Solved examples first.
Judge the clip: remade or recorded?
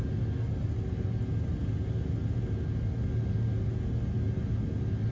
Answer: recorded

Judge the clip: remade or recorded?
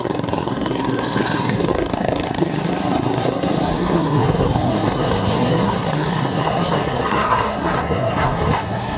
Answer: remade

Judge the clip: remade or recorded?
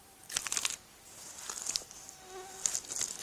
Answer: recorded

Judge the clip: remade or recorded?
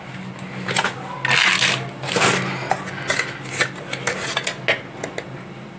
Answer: recorded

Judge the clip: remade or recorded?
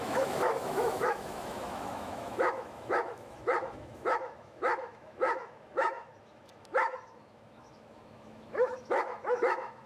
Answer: remade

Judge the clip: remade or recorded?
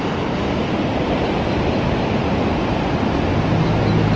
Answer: recorded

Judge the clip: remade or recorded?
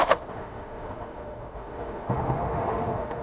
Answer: remade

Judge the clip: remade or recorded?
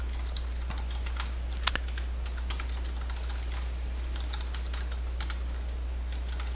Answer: recorded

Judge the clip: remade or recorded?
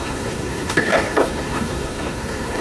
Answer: remade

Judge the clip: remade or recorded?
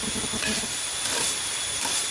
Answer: remade